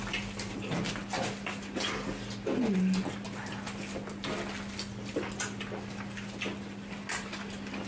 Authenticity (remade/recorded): recorded